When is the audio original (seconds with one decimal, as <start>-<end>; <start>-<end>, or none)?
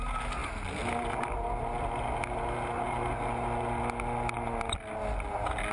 0.0-5.7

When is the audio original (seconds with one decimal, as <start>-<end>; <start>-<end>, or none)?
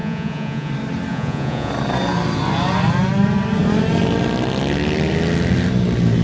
0.7-1.1; 1.7-6.2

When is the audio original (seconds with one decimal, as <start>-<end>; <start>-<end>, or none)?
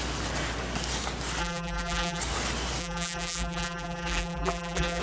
0.0-1.4; 2.2-2.8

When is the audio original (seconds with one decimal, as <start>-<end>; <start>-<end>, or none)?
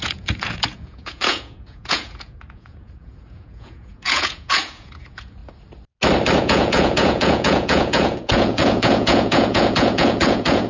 5.4-6.4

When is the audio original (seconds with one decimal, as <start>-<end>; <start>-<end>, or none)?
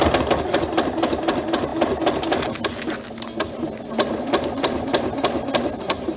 0.0-6.2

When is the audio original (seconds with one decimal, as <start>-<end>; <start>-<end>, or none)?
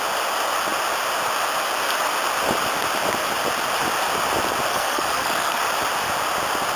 0.0-4.7; 5.6-6.8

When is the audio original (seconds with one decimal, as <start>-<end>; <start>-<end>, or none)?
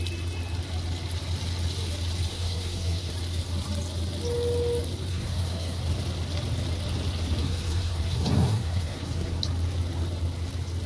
0.0-2.3; 3.1-5.1; 5.8-7.4; 9.4-10.9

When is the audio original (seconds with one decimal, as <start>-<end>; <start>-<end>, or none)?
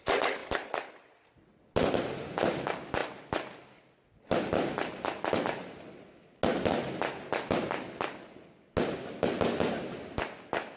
0.0-3.0; 5.6-10.8